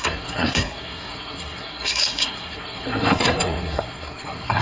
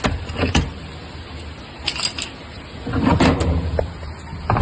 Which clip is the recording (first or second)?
second